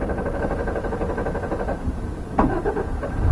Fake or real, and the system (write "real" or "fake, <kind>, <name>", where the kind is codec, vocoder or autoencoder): real